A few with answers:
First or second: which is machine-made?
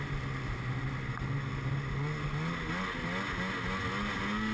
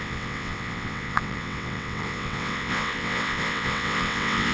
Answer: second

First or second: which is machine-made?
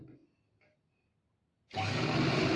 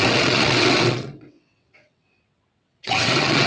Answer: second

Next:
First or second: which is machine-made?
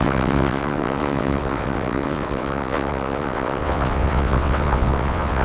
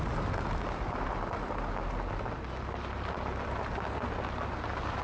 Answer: first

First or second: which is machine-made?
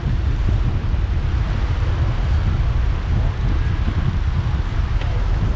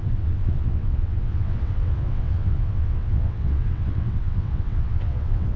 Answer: second